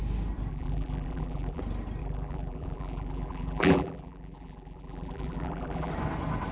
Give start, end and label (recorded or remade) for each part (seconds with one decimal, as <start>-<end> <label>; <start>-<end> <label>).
0.0-0.5 recorded; 0.5-1.6 remade; 1.6-2.0 recorded; 2.0-5.9 remade; 5.9-6.5 recorded